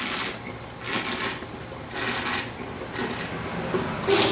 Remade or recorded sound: recorded